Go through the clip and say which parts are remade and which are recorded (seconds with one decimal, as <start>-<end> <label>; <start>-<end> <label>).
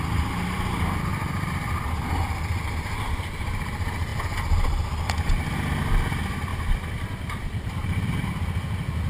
0.0-1.1 recorded; 1.1-2.1 remade; 2.1-6.5 recorded; 6.5-8.3 remade; 8.3-9.1 recorded